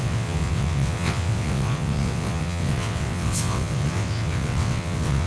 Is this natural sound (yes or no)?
no